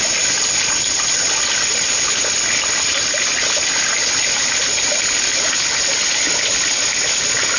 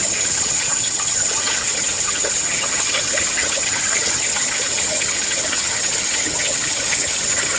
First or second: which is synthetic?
second